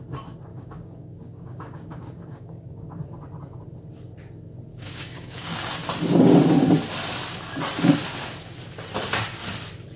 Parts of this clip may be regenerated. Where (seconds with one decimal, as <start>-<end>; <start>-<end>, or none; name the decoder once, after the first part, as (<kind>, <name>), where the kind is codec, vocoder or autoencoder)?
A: 0.5-2.9 (codec, DAC); 4.7-5.7